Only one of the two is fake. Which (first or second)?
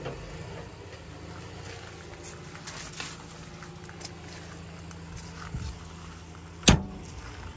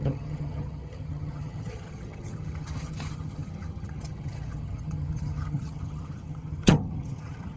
second